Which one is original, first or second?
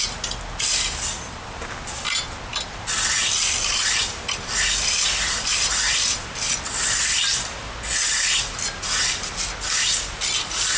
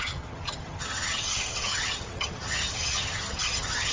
first